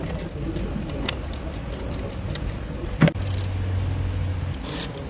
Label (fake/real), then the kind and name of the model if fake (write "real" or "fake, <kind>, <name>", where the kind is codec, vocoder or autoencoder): real